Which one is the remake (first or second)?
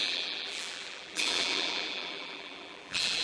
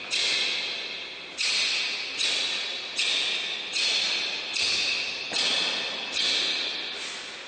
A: first